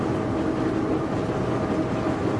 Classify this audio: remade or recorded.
recorded